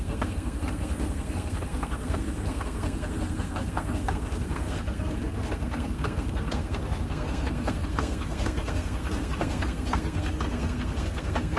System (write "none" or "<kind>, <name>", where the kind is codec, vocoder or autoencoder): codec, SNAC